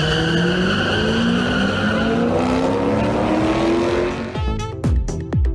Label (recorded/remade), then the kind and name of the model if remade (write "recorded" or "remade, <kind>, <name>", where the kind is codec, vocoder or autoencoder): recorded